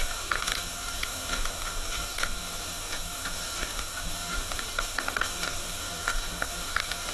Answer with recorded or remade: remade